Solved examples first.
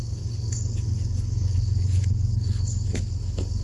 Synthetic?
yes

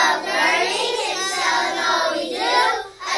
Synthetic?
no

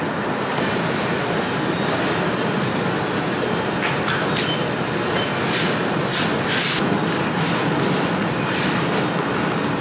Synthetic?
no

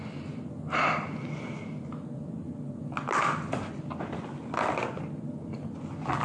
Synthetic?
no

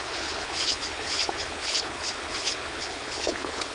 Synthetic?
yes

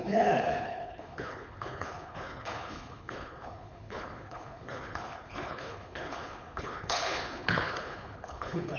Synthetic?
yes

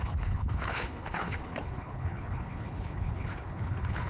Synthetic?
yes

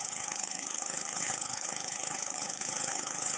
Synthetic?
yes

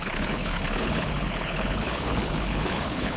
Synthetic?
yes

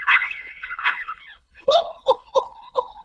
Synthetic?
yes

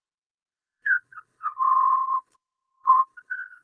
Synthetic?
yes